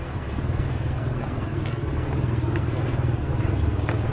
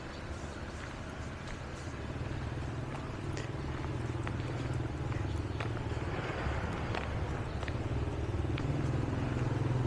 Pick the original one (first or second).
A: second